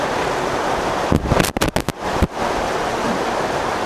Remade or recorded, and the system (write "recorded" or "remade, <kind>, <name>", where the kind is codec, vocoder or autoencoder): recorded